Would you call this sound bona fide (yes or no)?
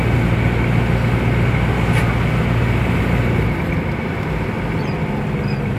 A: yes